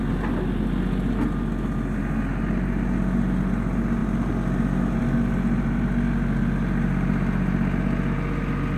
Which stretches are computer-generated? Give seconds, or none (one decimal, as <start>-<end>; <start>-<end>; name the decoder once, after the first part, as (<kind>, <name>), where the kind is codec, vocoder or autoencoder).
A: none